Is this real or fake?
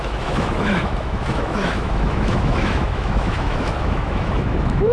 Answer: fake